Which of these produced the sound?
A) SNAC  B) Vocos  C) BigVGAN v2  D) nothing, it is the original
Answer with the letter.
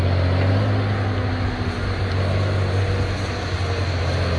D